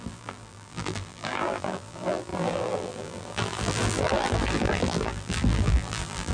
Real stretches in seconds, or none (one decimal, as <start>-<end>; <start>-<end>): none